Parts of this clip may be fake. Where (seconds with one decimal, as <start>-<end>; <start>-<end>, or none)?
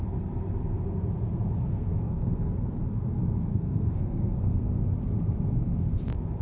1.7-2.5; 3.5-4.8